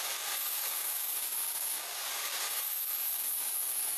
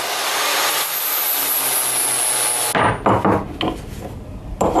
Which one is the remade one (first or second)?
first